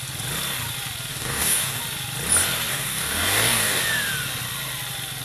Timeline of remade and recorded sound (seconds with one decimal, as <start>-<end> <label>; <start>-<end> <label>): 0.0-1.1 recorded; 1.1-1.8 remade; 1.8-2.7 recorded; 2.7-3.8 remade; 3.8-5.2 recorded

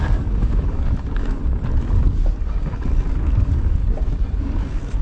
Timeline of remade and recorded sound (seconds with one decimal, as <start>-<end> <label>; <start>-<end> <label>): 0.0-1.4 remade; 1.4-3.3 recorded; 3.3-3.8 remade; 3.8-4.4 recorded; 4.4-5.0 remade

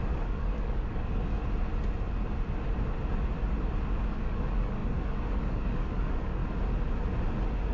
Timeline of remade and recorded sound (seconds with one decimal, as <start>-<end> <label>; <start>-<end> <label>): 0.0-1.4 remade; 1.4-4.1 recorded; 4.1-6.4 remade; 6.4-7.7 recorded

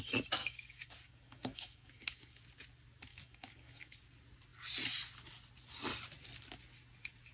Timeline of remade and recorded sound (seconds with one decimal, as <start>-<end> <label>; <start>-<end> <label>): 0.0-0.4 recorded; 0.4-2.4 remade; 2.4-3.1 recorded; 3.1-4.0 remade; 4.0-7.3 recorded

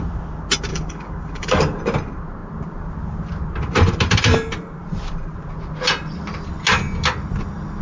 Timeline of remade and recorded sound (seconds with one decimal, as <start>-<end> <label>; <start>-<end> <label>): 0.0-0.7 recorded; 0.7-1.8 remade; 1.8-7.8 recorded